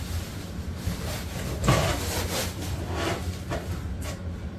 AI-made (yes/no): no